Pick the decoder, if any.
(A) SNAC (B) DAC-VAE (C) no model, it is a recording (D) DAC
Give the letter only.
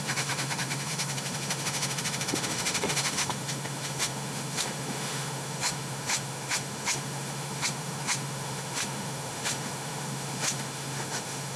B